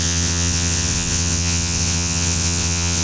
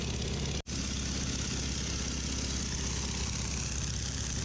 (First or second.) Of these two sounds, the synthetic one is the first